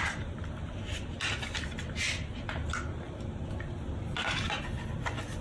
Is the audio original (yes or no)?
yes